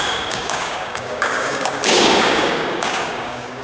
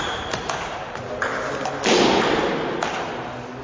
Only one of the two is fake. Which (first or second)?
first